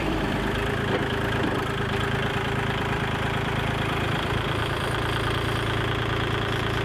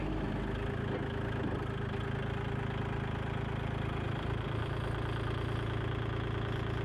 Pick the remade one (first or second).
first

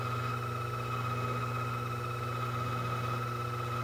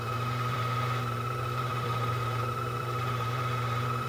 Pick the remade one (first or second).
second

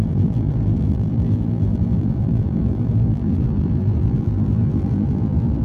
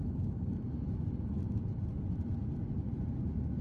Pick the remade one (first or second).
first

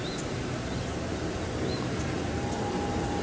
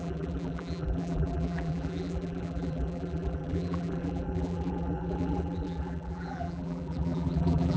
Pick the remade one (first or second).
second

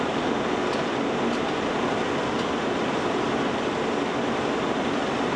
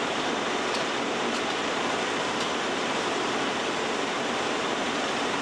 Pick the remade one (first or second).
second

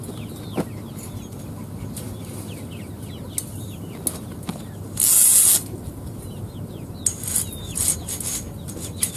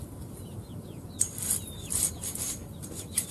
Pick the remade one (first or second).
second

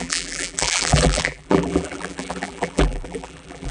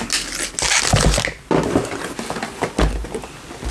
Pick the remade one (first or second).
first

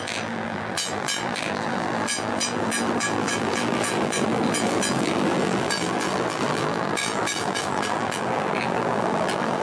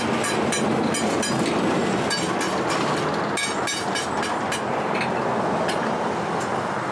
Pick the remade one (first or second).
first